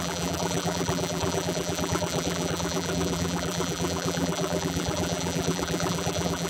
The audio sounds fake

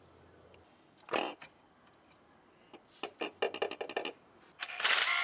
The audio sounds real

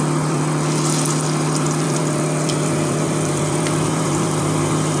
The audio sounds fake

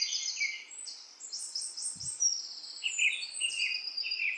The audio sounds fake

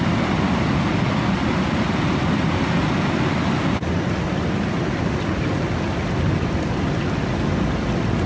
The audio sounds real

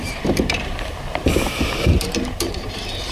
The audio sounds fake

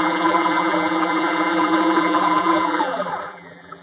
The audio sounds fake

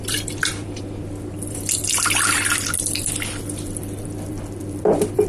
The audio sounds fake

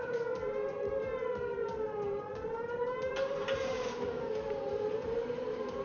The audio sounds fake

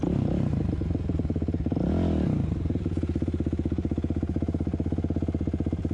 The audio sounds real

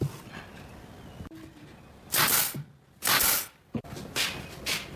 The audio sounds real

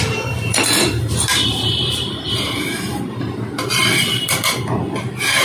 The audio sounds fake